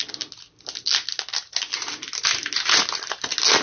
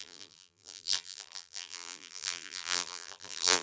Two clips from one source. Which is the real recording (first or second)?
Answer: first